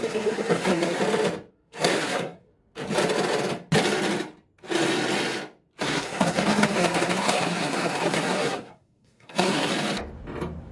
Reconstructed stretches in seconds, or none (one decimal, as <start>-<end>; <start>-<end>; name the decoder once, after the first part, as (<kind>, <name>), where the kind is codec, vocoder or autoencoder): 0.0-1.0 (codec, SNAC); 1.5-2.5; 5.8-9.7